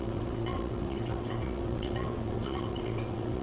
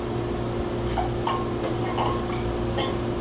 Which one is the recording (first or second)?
second